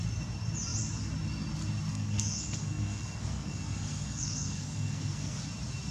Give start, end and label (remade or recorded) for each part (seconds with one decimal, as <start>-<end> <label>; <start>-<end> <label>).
0.0-1.9 recorded; 1.9-5.4 remade; 5.4-5.9 recorded